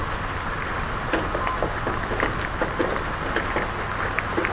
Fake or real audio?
real